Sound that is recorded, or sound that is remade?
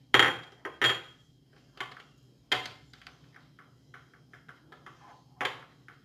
recorded